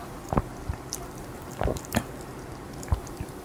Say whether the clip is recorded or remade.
remade